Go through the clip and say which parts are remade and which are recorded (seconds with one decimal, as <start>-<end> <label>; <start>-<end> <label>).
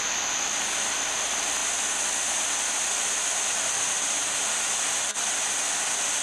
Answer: 0.0-6.2 recorded